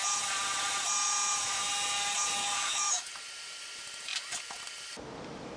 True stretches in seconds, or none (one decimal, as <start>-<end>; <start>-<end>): 0.0-2.4; 3.1-5.6